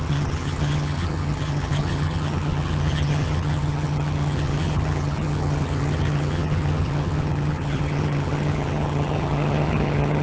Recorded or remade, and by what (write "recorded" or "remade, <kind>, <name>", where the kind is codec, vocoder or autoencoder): remade, vocoder, HiFi-GAN